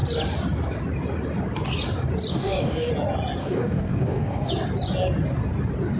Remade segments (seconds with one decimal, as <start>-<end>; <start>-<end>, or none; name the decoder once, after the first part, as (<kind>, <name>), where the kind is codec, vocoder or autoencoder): 2.3-2.9 (codec, DAC); 3.4-4.5